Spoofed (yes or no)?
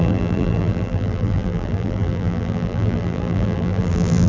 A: yes